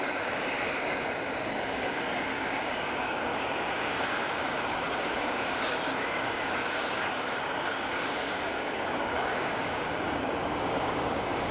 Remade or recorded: remade